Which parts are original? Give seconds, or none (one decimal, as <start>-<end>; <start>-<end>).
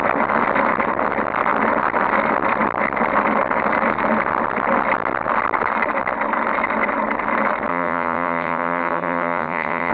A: 0.0-7.7